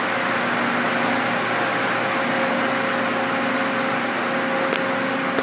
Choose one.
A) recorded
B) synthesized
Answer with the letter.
A